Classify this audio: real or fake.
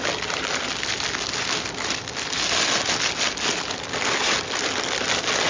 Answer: real